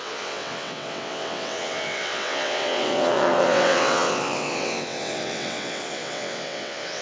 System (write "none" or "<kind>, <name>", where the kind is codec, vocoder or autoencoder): vocoder, WaveNeXt